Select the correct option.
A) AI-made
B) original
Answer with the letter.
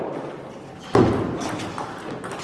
B